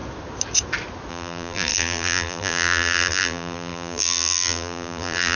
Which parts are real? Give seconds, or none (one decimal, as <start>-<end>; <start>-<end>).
0.0-1.1